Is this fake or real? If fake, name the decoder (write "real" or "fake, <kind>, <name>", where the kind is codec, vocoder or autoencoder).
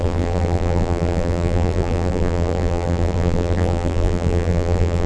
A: fake, vocoder, BigVGAN v2